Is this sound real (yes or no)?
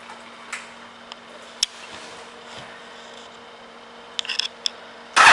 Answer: yes